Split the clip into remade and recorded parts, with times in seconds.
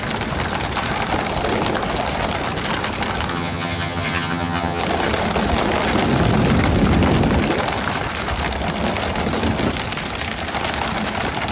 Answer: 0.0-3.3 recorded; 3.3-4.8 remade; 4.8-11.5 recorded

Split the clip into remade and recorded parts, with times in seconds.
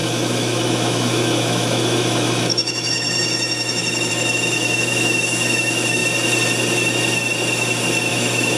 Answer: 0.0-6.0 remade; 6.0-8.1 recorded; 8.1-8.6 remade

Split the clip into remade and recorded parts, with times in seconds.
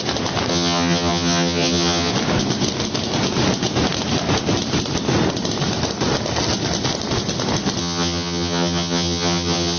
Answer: 0.0-0.5 recorded; 0.5-2.1 remade; 2.1-7.8 recorded; 7.8-9.8 remade